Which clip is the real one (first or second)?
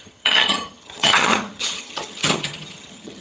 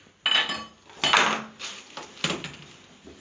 second